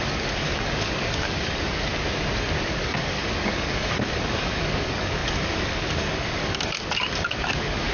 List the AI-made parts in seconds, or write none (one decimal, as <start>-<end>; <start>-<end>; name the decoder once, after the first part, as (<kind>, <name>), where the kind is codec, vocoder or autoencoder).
0.0-1.9 (codec, DAC); 2.7-7.9